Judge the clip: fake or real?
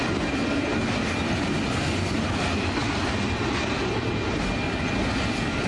real